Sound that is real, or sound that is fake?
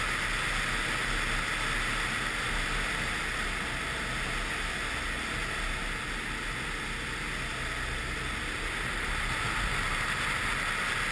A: real